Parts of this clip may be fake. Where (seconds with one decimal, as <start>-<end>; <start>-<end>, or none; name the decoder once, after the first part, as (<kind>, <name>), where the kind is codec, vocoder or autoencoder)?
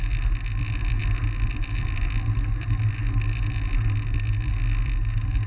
none